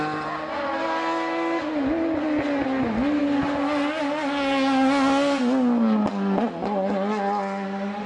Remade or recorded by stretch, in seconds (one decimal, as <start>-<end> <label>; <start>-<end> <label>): 0.0-8.1 recorded